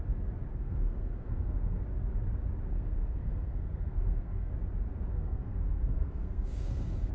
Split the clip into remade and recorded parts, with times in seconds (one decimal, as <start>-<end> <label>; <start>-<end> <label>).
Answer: 0.0-0.5 recorded; 0.5-1.8 remade; 1.8-2.7 recorded; 2.7-4.5 remade; 4.5-5.1 recorded; 5.1-7.1 remade